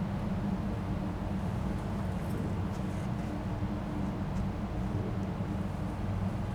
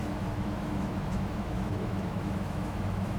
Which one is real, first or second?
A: first